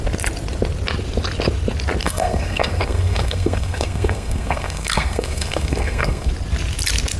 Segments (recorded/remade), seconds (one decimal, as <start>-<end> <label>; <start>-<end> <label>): 0.0-2.0 recorded; 2.0-6.3 remade; 6.3-7.2 recorded